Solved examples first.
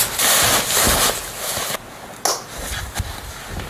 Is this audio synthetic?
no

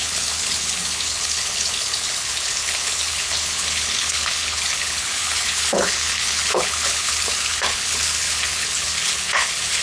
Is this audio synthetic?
yes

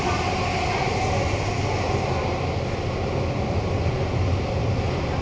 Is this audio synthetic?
no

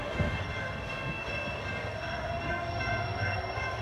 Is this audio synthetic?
yes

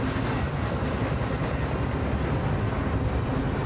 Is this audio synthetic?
no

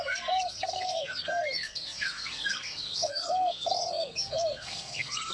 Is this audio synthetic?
yes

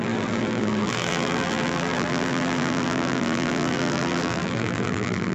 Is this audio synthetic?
yes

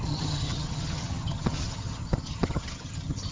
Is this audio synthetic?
yes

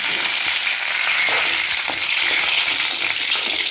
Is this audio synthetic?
no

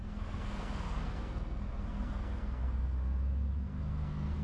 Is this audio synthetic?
yes